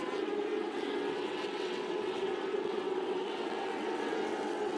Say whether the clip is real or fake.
fake